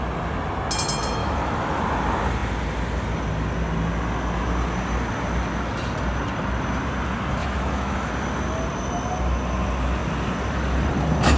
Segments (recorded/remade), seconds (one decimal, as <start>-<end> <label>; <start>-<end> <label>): 0.0-1.2 recorded; 1.2-1.8 remade; 1.8-7.4 recorded; 7.4-8.1 remade; 8.1-11.4 recorded